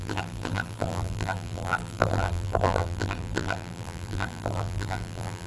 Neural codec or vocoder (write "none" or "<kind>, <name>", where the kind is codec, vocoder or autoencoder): vocoder, BigVGAN v2